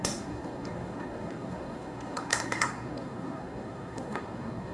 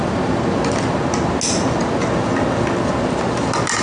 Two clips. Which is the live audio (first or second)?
second